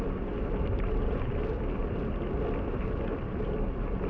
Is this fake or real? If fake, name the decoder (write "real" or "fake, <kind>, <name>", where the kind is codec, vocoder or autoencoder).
real